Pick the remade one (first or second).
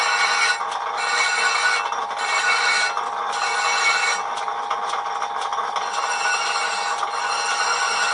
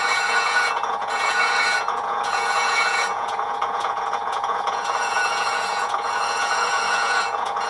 second